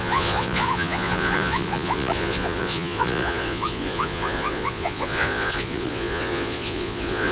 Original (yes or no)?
no